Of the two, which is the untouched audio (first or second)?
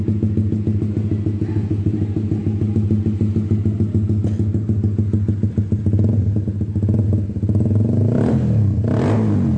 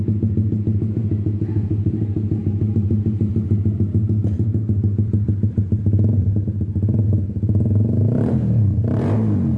first